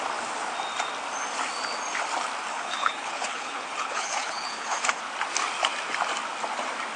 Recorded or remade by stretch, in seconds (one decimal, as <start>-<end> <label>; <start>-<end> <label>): 0.0-2.5 recorded; 2.5-5.0 remade; 5.0-7.0 recorded